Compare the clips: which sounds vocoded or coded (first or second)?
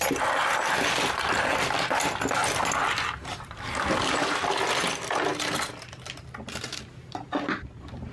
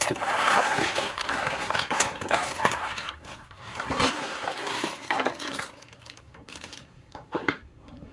second